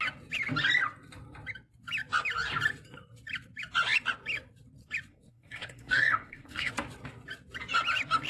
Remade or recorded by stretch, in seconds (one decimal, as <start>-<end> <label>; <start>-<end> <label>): 0.0-5.1 recorded; 5.1-6.7 remade; 6.7-8.3 recorded